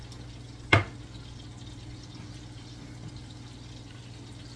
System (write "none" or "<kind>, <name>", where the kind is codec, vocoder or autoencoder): none